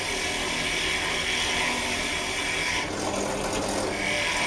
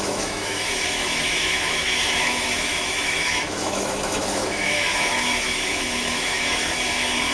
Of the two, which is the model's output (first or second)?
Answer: second